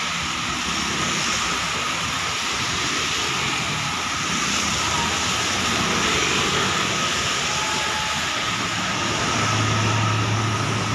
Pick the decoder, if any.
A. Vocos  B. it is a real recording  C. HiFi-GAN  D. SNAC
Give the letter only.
B